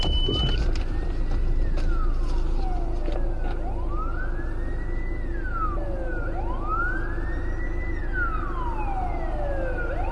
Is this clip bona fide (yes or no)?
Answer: yes